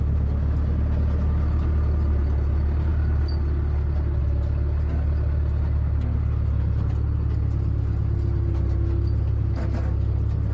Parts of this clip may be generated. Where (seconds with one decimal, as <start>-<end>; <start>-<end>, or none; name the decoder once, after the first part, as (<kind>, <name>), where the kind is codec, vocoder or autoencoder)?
none